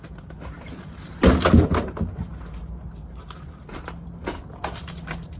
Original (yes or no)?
yes